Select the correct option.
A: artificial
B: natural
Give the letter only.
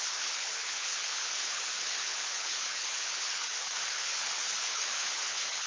A